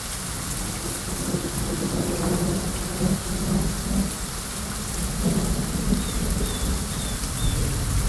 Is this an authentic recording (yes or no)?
yes